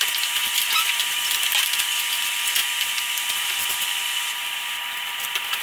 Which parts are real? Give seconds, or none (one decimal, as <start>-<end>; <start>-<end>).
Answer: none